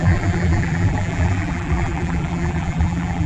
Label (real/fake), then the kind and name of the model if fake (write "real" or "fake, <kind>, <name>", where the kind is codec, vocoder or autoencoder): fake, vocoder, BigVGAN v2